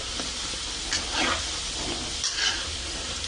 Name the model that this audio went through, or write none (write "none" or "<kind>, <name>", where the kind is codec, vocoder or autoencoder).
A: none